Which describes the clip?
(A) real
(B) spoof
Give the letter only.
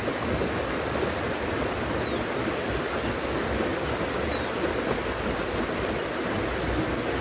A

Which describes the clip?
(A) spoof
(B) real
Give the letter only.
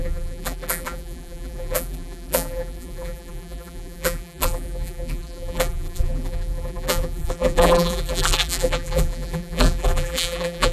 A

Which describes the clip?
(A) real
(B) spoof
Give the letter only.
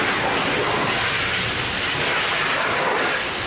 A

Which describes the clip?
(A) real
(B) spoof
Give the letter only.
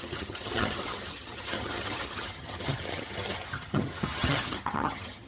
B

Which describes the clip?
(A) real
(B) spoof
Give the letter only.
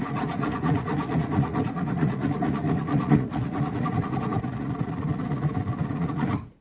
B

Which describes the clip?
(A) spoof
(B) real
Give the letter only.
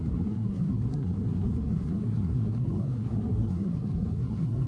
A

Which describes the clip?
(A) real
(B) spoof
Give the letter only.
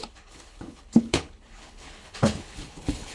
B